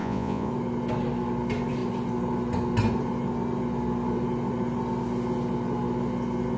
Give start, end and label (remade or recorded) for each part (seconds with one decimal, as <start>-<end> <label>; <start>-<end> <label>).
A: 0.0-0.5 remade; 0.5-6.6 recorded